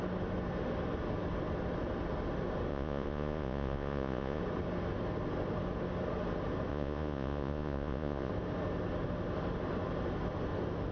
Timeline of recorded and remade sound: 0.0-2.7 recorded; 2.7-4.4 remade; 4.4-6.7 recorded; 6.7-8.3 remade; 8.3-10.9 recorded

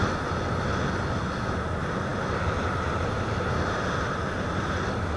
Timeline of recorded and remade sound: 0.0-5.2 recorded

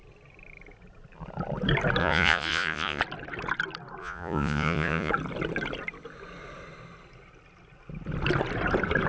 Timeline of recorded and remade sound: 0.0-2.0 recorded; 2.0-3.0 remade; 3.0-4.0 recorded; 4.0-5.1 remade; 5.1-9.1 recorded